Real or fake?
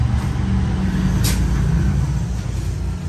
real